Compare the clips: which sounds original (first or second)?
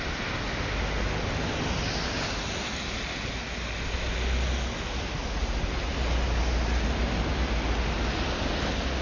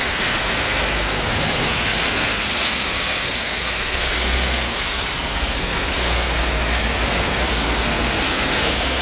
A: first